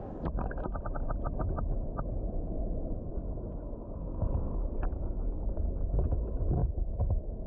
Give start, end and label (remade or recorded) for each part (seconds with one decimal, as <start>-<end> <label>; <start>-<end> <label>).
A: 0.0-3.1 recorded; 3.1-6.0 remade; 6.0-7.5 recorded